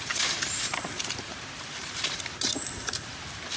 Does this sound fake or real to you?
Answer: fake